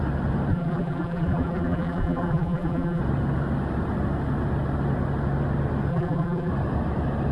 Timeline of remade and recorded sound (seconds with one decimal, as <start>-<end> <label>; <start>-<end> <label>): 0.0-0.5 recorded; 0.5-3.0 remade; 3.0-5.9 recorded; 5.9-6.5 remade; 6.5-7.3 recorded